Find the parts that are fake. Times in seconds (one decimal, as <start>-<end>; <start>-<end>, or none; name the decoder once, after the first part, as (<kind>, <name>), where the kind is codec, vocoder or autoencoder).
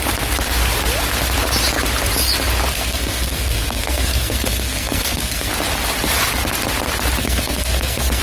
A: 2.7-5.5 (codec, SNAC); 7.2-8.2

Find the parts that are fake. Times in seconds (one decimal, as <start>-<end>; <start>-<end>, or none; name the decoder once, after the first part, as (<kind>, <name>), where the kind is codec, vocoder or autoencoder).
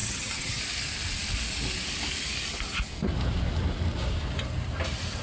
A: 0.0-0.6 (vocoder, HiFi-GAN)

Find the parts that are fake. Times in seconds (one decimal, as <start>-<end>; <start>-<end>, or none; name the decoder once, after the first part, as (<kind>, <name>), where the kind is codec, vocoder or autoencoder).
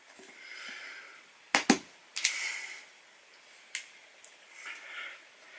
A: none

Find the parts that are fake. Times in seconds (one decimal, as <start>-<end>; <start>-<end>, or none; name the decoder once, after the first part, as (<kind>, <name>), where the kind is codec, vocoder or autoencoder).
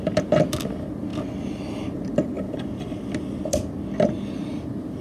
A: none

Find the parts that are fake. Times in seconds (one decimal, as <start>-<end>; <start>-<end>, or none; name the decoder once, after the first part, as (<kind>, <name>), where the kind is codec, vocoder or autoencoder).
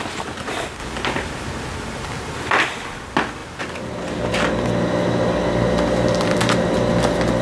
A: 0.8-2.5 (vocoder, BigVGAN v2)